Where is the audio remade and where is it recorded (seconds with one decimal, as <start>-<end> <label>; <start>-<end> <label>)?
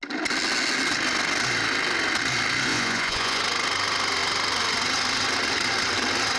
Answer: 0.0-2.7 recorded; 2.7-3.4 remade; 3.4-6.4 recorded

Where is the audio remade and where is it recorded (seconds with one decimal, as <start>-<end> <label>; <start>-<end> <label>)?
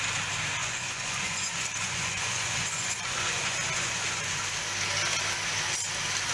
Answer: 0.0-0.6 recorded; 0.6-4.4 remade; 4.4-6.3 recorded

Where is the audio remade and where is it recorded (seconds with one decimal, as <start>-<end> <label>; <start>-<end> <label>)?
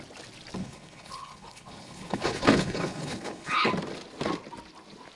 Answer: 0.0-0.6 recorded; 0.6-3.7 remade; 3.7-5.2 recorded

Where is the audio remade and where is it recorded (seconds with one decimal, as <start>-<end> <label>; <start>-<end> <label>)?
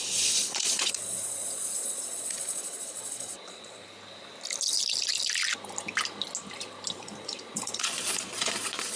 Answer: 0.0-3.8 remade; 3.8-6.9 recorded; 6.9-9.0 remade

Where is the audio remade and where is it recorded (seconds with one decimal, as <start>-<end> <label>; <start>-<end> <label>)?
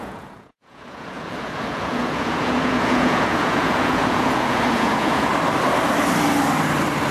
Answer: 0.0-5.3 remade; 5.3-7.1 recorded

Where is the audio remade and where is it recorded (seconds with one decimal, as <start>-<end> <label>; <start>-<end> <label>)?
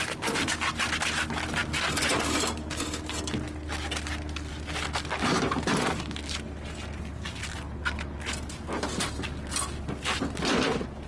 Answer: 0.0-11.1 recorded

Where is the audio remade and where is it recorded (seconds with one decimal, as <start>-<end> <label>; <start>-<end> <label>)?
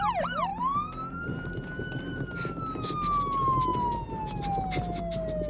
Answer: 0.0-0.5 recorded; 0.5-2.3 remade; 2.3-5.5 recorded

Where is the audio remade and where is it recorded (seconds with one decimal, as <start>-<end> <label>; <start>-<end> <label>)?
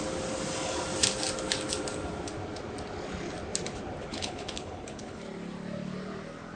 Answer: 0.0-4.1 recorded; 4.1-5.2 remade; 5.2-6.6 recorded